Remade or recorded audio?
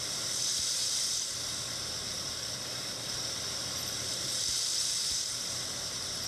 remade